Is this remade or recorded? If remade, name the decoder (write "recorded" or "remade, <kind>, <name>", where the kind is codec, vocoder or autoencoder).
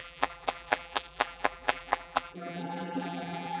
remade, vocoder, BigVGAN v2